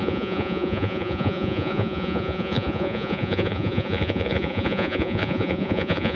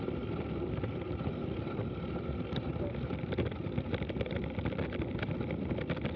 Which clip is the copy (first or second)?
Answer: first